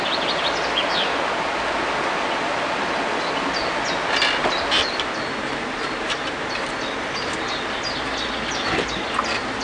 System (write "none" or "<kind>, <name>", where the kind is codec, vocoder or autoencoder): none